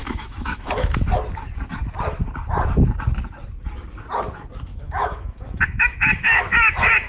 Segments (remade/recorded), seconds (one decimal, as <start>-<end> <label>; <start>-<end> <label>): 0.0-1.0 remade; 1.0-4.7 recorded; 4.7-7.1 remade

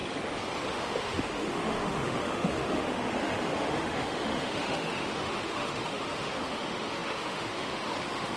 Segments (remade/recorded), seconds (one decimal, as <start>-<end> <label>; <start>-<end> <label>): 0.0-0.7 recorded; 0.7-8.4 remade

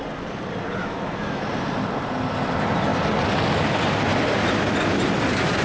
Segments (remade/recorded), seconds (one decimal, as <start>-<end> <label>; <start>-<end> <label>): 0.0-0.8 recorded; 0.8-1.4 remade; 1.4-5.6 recorded

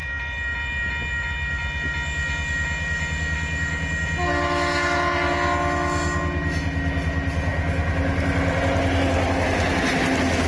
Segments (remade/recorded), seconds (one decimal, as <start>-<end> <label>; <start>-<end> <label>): 0.0-10.5 recorded

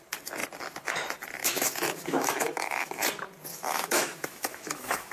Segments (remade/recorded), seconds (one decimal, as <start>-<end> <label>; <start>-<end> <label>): 0.0-1.4 recorded; 1.4-2.9 remade; 2.9-3.5 recorded; 3.5-5.1 remade